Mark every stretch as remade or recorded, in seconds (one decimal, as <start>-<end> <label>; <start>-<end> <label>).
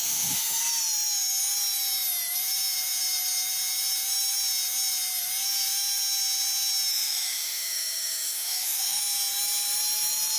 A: 0.0-0.6 remade; 0.6-6.9 recorded; 6.9-9.0 remade; 9.0-10.4 recorded